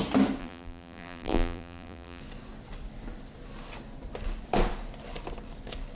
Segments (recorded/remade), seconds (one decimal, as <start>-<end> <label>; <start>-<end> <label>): 0.0-0.4 recorded; 0.4-2.2 remade; 2.2-6.0 recorded